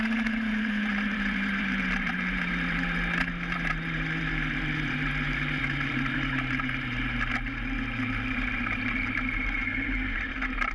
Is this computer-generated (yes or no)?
yes